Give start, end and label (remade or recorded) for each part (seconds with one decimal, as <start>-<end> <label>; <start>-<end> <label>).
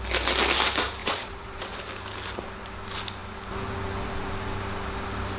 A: 0.0-1.0 recorded; 1.0-1.8 remade; 1.8-5.4 recorded